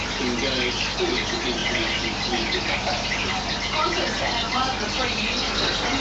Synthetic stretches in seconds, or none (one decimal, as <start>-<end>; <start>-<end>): none